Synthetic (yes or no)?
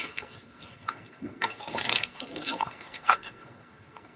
yes